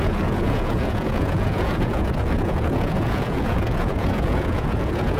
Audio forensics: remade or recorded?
remade